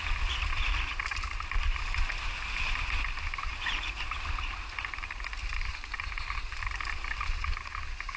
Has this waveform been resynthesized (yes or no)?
no